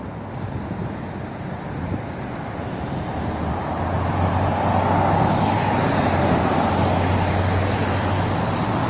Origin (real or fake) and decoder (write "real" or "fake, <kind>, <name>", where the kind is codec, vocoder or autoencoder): real